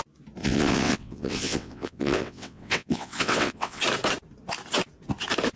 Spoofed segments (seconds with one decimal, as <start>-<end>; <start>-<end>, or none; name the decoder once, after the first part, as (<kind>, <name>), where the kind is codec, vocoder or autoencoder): 0.4-3.8 (vocoder, WaveNeXt)